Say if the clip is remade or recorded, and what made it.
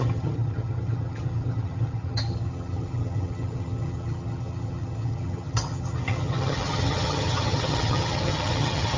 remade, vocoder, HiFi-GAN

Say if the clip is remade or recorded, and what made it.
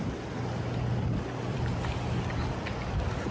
recorded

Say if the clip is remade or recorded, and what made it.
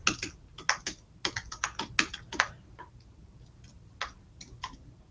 recorded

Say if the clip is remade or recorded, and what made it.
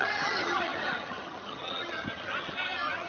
remade, vocoder, HiFi-GAN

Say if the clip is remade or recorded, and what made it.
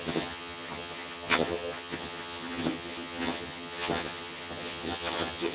remade, vocoder, HiFi-GAN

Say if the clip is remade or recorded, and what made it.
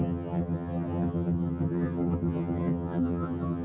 remade, vocoder, HiFi-GAN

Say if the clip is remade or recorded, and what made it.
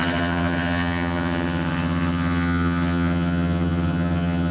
remade, vocoder, HiFi-GAN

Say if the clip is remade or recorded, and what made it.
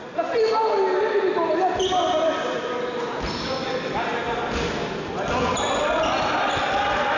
recorded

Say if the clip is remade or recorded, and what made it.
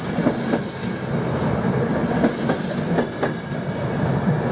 recorded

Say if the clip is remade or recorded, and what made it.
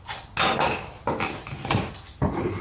recorded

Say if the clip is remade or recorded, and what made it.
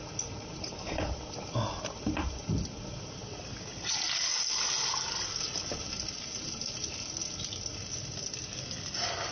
recorded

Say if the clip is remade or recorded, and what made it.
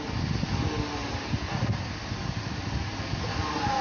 recorded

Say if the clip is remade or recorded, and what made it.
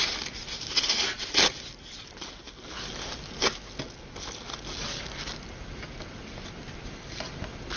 recorded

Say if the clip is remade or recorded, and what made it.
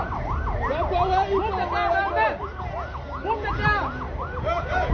recorded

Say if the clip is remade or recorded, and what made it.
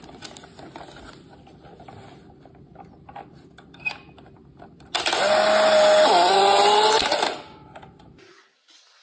recorded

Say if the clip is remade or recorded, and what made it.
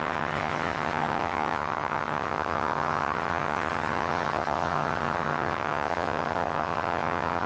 remade, vocoder, HiFi-GAN